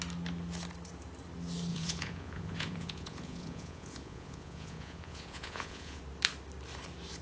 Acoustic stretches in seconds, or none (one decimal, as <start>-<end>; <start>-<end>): 0.0-1.7; 6.0-7.2